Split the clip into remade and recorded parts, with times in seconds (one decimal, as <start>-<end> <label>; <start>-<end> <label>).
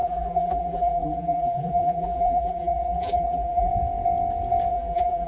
0.0-3.7 remade; 3.7-4.7 recorded; 4.7-5.3 remade